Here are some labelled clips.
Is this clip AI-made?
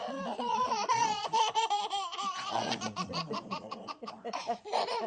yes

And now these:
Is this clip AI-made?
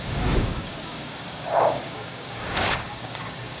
yes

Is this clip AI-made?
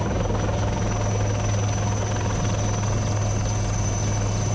no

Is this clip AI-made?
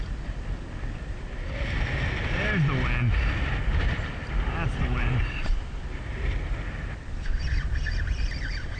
no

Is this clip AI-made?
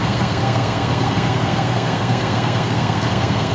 yes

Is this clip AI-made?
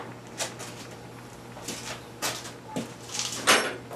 no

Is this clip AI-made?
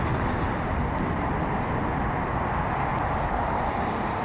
no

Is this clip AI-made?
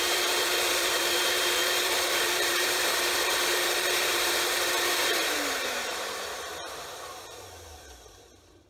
yes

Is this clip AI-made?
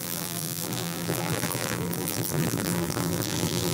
yes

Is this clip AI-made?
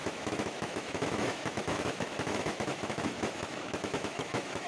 yes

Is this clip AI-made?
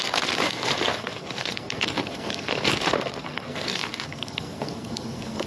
yes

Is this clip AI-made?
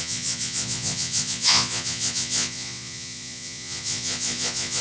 yes